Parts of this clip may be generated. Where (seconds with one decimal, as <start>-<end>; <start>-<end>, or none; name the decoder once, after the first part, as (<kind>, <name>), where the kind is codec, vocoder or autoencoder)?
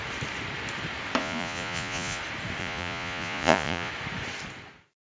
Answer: 1.2-2.2 (vocoder, Vocos); 2.6-3.9